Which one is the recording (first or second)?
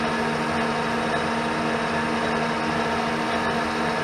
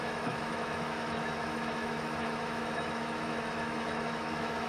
first